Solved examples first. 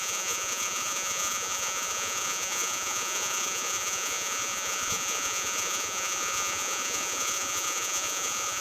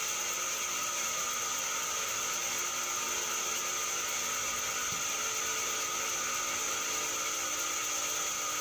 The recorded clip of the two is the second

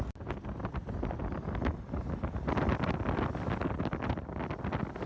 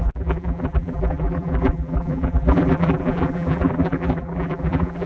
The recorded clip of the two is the first